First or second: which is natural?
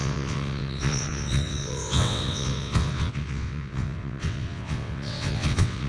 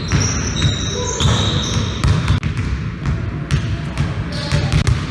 second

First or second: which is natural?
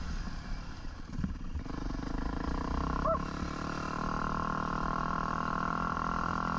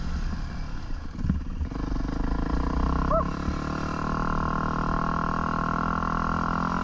second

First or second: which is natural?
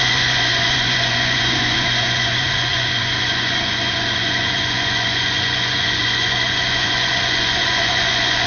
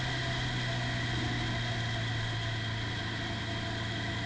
second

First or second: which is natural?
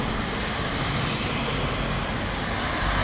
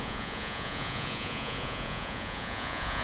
first